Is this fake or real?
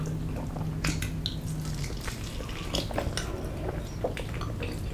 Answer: real